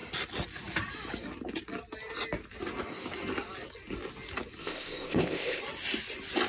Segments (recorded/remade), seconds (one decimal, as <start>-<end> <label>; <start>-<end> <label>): 0.0-4.6 recorded; 4.6-5.6 remade; 5.6-6.5 recorded